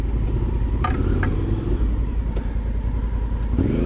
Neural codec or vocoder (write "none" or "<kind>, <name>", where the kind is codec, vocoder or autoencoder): none